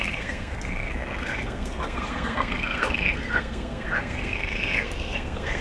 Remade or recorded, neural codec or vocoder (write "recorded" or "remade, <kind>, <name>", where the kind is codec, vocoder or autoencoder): remade, codec, SNAC